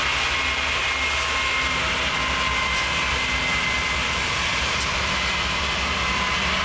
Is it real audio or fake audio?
real